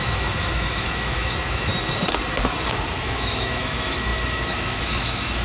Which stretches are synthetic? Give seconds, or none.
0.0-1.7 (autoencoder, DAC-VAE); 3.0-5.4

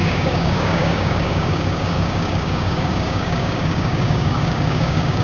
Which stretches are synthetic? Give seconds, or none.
0.0-5.2 (codec, DAC)

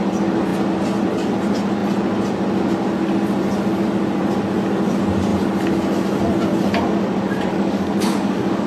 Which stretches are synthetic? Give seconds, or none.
7.5-8.7 (codec, DAC)

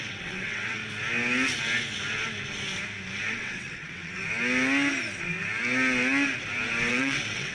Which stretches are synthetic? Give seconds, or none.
0.0-0.8 (vocoder, WaveNeXt); 3.3-4.2; 6.9-7.5

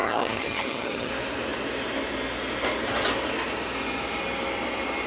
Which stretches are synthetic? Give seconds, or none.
0.0-1.1 (vocoder, HiFi-GAN)

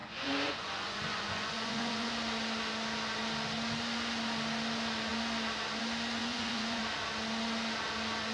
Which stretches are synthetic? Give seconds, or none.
0.0-2.1 (vocoder, Vocos); 6.2-6.8